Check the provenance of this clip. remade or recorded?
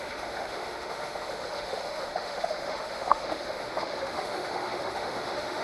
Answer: remade